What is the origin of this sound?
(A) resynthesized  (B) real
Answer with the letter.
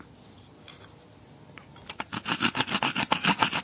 B